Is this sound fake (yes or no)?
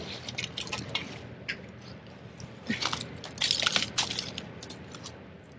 no